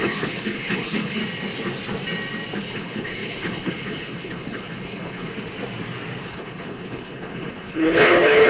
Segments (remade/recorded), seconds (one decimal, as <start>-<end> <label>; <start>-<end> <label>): 0.0-1.2 remade; 1.2-2.6 recorded; 2.6-5.3 remade; 5.3-6.2 recorded; 6.2-8.5 remade

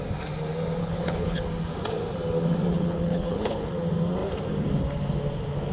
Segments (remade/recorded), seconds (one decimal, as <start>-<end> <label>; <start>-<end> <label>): 0.0-0.8 recorded; 0.8-1.4 remade; 1.4-2.7 recorded; 2.7-3.7 remade; 3.7-5.7 recorded

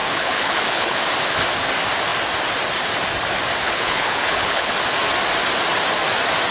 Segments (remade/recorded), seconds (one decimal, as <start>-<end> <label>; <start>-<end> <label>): 0.0-1.0 remade; 1.0-3.6 recorded; 3.6-4.7 remade; 4.7-6.5 recorded